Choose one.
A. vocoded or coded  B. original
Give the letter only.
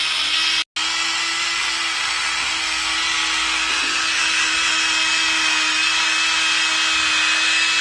B